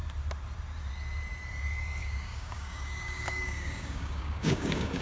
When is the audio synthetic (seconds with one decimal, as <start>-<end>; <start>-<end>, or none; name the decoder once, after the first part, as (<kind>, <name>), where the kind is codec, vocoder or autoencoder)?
2.0-5.0 (codec, DAC)